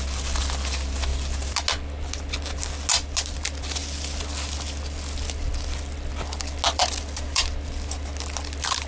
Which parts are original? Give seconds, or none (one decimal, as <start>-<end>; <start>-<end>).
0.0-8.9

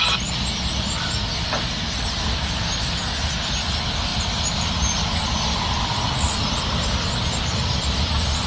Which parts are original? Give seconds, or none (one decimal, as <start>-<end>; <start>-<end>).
0.0-4.1

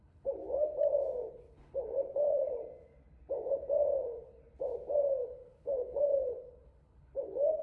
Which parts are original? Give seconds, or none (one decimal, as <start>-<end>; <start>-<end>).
0.4-1.3; 2.6-4.0; 4.4-5.2